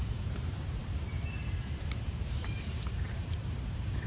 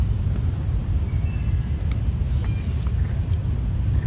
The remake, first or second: first